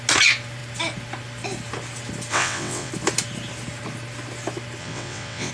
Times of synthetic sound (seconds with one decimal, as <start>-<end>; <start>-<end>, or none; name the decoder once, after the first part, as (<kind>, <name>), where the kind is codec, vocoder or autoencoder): 2.3-2.9 (vocoder, WaveNeXt); 4.8-5.5